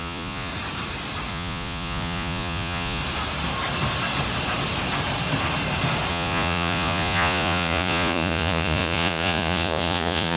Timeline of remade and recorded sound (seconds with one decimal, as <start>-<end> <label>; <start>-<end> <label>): 0.0-0.5 remade; 0.5-1.3 recorded; 1.3-3.0 remade; 3.0-6.1 recorded; 6.1-10.4 remade